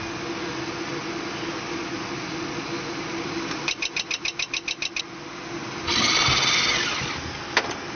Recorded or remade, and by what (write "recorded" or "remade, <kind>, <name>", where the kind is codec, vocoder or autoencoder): recorded